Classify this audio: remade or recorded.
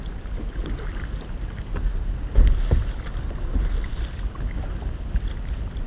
recorded